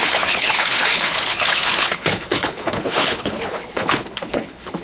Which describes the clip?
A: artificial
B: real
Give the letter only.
A